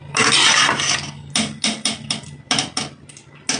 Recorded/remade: recorded